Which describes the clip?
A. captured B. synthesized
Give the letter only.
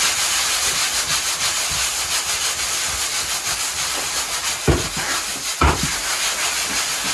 A